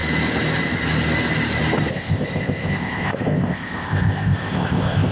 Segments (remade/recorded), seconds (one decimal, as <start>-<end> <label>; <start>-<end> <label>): 0.0-1.9 recorded; 1.9-5.1 remade